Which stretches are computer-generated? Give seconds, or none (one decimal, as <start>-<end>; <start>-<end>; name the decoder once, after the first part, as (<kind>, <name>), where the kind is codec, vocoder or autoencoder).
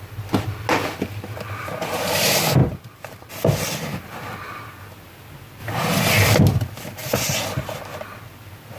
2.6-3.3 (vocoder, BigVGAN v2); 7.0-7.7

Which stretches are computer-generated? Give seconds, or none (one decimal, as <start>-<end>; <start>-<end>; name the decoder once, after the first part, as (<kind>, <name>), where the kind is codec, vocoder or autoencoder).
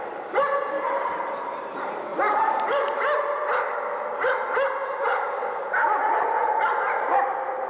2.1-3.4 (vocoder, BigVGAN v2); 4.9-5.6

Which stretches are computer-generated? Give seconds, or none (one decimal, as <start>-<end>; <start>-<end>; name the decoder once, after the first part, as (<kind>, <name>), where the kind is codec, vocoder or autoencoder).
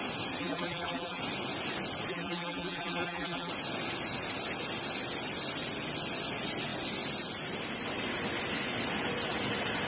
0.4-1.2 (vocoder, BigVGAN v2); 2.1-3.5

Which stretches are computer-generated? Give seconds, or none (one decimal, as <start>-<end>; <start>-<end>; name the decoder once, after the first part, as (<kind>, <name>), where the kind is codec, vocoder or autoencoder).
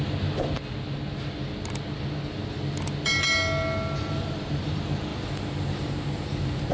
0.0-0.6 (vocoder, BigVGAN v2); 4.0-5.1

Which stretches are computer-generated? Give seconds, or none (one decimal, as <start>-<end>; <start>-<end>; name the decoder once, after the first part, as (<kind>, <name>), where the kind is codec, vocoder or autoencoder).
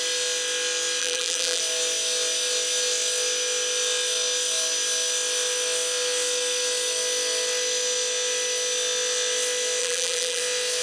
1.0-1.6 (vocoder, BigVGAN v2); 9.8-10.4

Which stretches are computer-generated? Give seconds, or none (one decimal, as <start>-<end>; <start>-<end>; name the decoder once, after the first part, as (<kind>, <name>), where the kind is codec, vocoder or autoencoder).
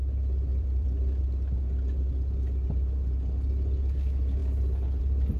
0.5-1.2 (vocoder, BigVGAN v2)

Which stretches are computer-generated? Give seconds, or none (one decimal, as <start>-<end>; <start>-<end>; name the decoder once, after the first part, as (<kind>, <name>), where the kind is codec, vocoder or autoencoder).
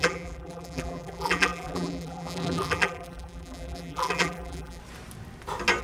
0.0-4.8 (vocoder, BigVGAN v2)